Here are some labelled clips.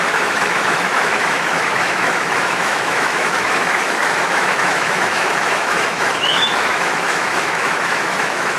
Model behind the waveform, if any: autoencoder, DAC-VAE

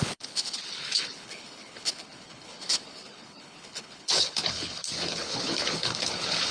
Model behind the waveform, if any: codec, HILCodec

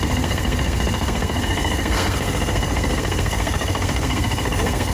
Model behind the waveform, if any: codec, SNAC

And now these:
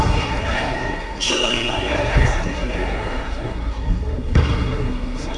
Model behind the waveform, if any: codec, SNAC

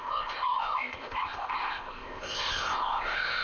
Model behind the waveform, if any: codec, ZipCodec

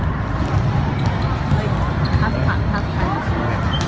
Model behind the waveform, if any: none